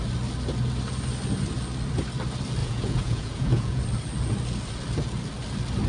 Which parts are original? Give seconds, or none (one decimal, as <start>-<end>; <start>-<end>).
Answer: 0.0-2.6; 3.8-5.9